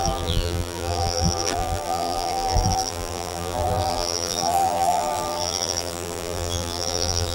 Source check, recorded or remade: remade